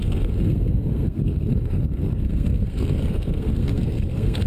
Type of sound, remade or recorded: remade